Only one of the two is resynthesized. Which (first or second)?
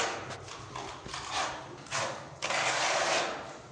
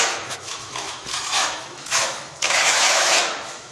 second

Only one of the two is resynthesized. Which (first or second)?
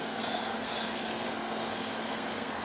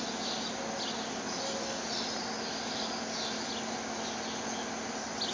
first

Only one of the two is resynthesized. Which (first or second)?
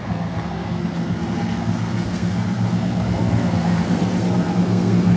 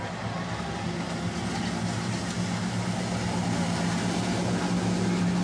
first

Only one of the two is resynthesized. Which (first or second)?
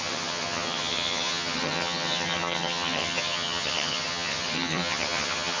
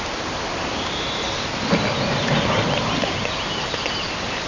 first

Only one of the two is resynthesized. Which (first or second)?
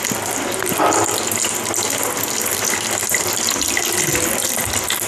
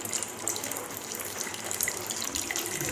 second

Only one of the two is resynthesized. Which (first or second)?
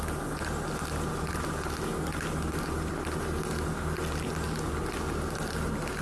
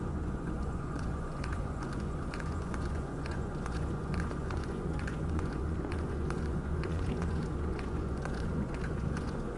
second